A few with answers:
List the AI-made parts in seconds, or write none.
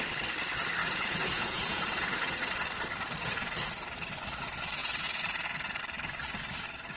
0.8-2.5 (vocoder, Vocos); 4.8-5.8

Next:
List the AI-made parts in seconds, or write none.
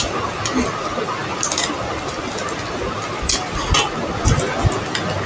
none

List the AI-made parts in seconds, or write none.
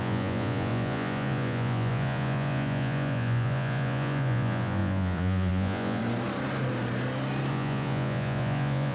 0.0-6.0 (vocoder, Vocos); 7.5-8.9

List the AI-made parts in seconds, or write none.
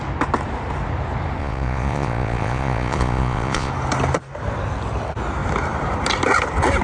1.4-3.7 (vocoder, Vocos)